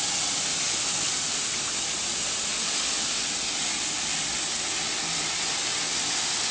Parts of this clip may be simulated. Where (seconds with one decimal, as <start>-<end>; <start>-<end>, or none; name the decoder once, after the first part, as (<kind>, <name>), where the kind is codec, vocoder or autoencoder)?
none